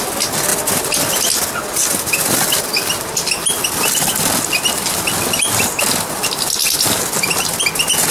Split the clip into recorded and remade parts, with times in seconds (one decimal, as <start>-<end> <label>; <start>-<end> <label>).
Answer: 0.0-8.1 recorded